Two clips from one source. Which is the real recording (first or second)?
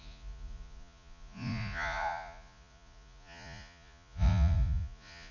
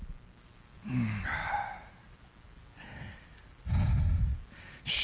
second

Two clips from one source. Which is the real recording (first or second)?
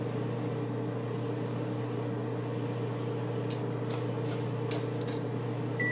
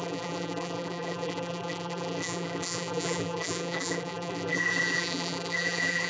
first